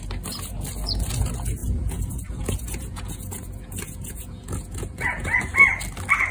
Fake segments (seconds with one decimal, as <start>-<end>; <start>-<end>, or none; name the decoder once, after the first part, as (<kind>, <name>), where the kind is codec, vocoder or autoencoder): 1.6-5.4 (vocoder, Vocos)

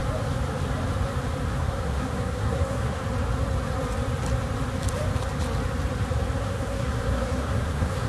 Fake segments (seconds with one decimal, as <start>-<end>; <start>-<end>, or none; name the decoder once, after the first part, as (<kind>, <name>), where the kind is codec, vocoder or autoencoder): 1.5-3.0 (codec, SNAC); 6.4-8.1

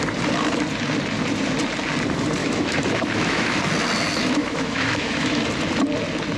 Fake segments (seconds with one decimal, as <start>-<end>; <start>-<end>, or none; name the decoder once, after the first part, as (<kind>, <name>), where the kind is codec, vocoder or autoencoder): 2.4-3.6 (autoencoder, DAC-VAE); 4.2-5.4